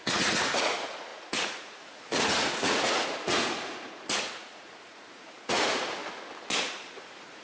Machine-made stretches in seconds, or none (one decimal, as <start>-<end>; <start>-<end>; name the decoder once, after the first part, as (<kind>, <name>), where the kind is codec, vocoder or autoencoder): 0.0-6.0 (vocoder, Vocos); 6.6-7.4